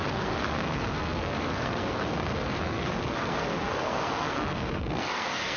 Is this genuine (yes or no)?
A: no